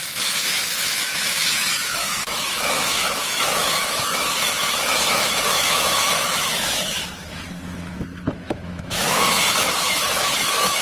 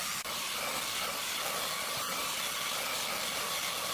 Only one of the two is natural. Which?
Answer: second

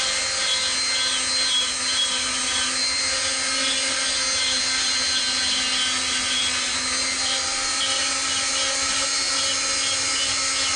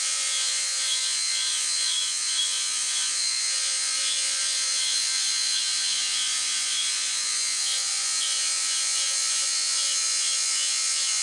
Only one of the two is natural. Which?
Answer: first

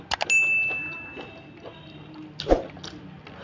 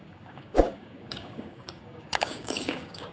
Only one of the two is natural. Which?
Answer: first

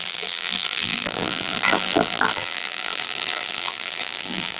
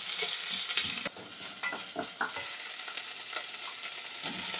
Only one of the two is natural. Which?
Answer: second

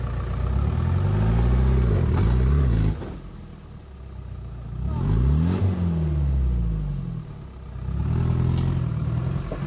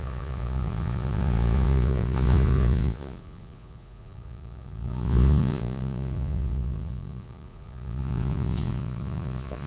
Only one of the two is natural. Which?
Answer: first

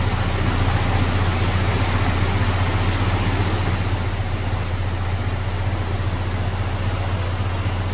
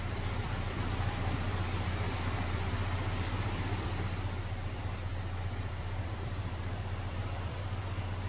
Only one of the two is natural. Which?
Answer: first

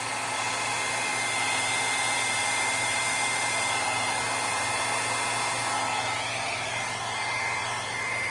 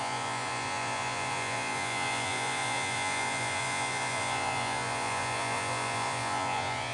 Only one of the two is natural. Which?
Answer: first